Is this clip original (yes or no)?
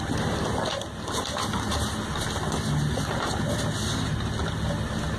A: yes